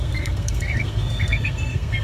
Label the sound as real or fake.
fake